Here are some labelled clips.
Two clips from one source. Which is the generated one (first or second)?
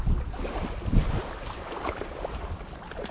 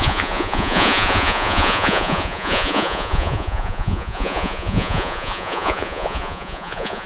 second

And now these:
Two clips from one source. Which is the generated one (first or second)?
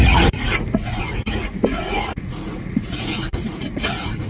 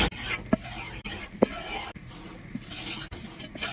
first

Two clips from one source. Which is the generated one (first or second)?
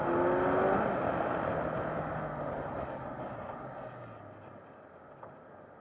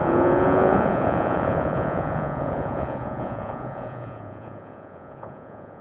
second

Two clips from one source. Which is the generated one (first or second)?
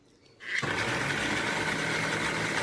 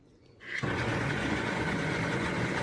second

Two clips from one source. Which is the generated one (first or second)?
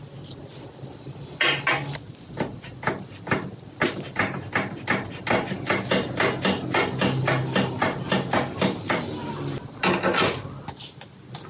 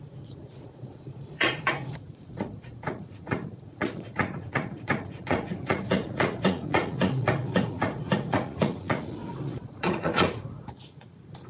second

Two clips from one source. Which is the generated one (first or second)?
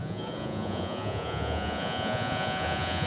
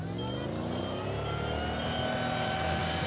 first